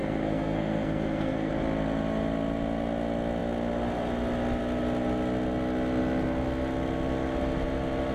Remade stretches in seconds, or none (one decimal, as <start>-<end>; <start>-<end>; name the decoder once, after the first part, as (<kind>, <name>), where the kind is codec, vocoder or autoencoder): 0.0-1.5 (codec, SNAC)